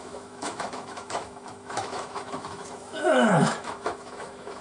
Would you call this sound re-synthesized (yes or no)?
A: yes